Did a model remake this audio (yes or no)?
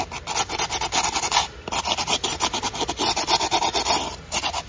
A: no